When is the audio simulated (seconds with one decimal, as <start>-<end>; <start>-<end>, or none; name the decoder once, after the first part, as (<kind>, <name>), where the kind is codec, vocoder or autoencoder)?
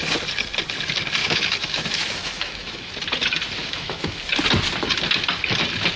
1.2-2.9 (autoencoder, DAC-VAE); 3.6-4.2